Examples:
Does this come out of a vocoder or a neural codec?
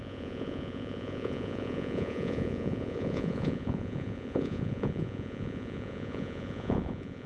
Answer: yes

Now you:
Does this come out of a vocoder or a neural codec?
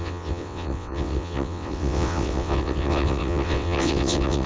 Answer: yes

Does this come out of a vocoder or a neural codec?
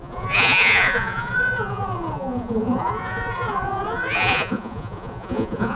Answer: yes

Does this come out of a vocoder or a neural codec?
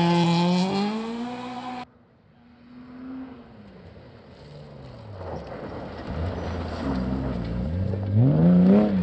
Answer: no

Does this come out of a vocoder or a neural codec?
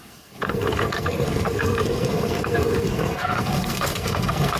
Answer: yes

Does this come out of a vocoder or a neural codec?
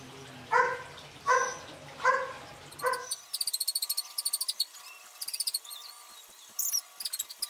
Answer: no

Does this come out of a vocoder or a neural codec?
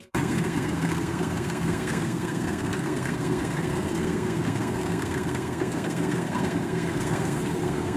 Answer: yes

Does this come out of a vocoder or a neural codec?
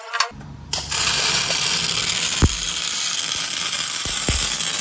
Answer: yes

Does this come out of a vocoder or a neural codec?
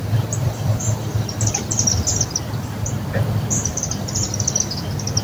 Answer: yes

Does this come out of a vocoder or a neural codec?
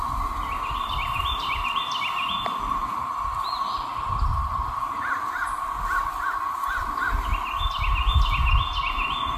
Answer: no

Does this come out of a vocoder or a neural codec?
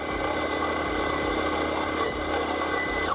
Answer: no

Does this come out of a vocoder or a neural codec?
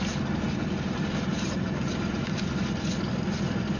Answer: no